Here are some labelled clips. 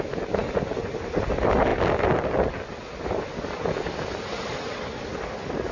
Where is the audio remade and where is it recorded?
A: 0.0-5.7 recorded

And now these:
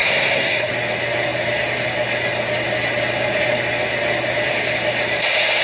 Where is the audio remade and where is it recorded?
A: 0.0-0.7 remade; 0.7-5.6 recorded

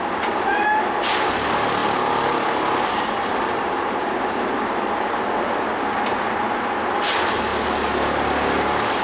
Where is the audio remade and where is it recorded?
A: 0.0-9.0 recorded

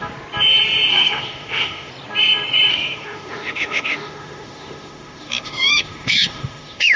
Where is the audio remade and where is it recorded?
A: 0.0-0.9 recorded; 0.9-1.9 remade; 1.9-2.7 recorded; 2.7-7.0 remade

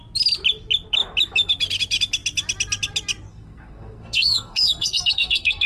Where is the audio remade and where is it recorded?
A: 0.0-3.3 recorded; 3.3-5.7 remade

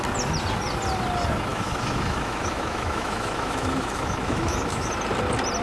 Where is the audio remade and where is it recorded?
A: 0.0-1.5 recorded; 1.5-4.9 remade; 4.9-5.6 recorded

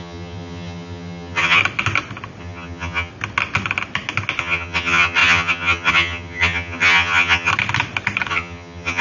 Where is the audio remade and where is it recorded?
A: 0.0-1.6 remade; 1.6-2.4 recorded; 2.4-3.1 remade; 3.1-4.4 recorded; 4.4-7.5 remade; 7.5-8.3 recorded; 8.3-9.0 remade

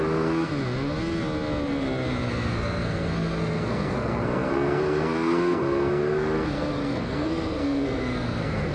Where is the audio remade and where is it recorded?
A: 0.0-0.5 remade; 0.5-2.3 recorded; 2.3-8.7 remade